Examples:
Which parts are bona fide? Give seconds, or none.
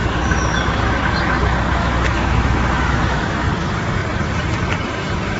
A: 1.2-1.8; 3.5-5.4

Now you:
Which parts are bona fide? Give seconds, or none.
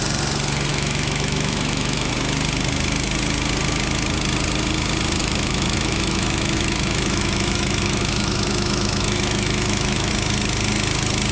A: 0.0-0.7; 2.1-5.2; 10.1-11.3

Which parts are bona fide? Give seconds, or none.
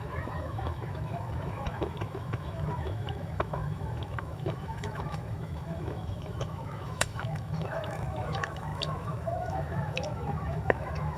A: none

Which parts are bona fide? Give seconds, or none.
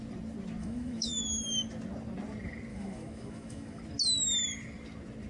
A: 0.0-0.6; 1.2-2.7; 3.8-5.3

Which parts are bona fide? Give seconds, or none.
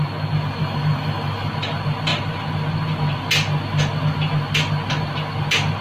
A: 0.0-0.6; 1.5-5.8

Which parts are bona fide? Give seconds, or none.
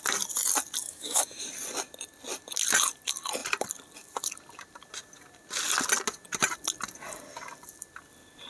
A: 0.0-0.8; 1.4-8.5